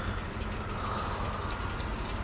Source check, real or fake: real